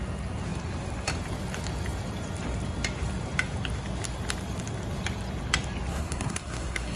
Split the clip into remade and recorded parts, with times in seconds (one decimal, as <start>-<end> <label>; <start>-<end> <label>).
0.0-5.9 recorded; 5.9-7.0 remade